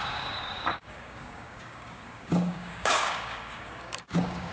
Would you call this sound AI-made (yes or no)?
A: yes